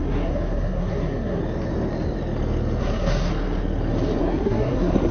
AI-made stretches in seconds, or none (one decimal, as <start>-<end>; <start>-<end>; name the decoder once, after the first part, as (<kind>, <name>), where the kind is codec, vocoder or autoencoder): 0.0-1.4 (codec, SNAC); 2.8-3.3; 4.2-5.1